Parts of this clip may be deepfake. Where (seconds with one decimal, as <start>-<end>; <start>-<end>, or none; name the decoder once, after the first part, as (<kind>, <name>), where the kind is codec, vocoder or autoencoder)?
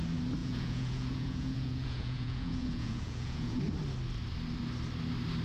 0.4-3.6 (vocoder, Vocos)